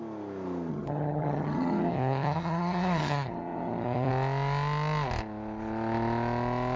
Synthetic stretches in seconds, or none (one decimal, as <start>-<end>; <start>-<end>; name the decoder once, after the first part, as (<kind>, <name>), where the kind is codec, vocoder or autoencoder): 0.7-4.1 (vocoder, HiFi-GAN)